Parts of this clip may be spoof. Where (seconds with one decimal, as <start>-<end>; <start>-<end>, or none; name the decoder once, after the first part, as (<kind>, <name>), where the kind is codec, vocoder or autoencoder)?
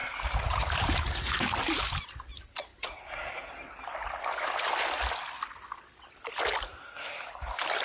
0.0-2.0 (vocoder, BigVGAN v2)